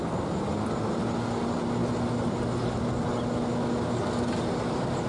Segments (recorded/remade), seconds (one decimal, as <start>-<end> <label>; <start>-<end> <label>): 0.0-5.1 recorded